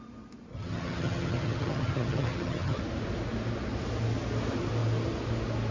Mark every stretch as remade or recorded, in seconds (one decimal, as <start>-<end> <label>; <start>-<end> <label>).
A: 0.0-0.5 recorded; 0.5-2.8 remade; 2.8-5.7 recorded

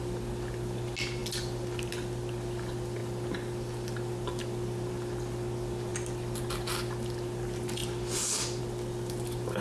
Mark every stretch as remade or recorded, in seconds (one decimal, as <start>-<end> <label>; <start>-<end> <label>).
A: 0.0-9.6 recorded

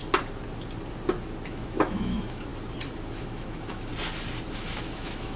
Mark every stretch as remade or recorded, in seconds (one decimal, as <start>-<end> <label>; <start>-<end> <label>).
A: 0.0-1.5 recorded; 1.5-2.5 remade; 2.5-3.2 recorded; 3.2-3.9 remade; 3.9-4.5 recorded; 4.5-5.4 remade